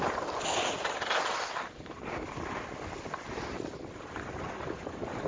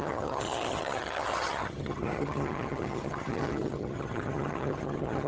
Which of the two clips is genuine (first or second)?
first